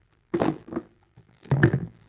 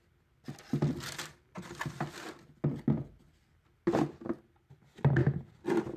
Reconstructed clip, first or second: first